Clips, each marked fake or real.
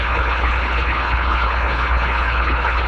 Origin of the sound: fake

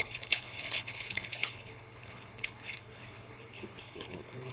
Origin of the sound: fake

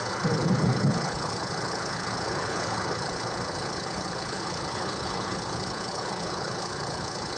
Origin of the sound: fake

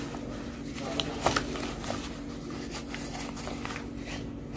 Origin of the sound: real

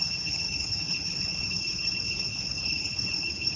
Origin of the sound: fake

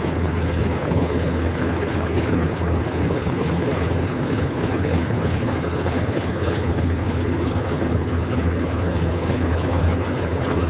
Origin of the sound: fake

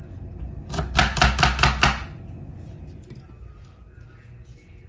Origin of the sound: real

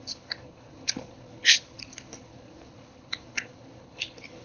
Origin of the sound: fake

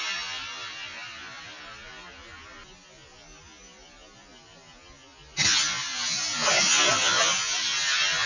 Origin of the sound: real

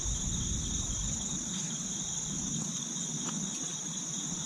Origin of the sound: real